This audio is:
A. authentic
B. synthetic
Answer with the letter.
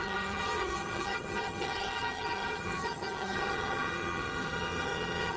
B